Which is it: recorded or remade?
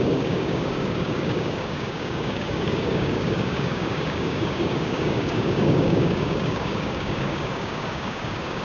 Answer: remade